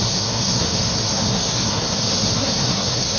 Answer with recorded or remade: remade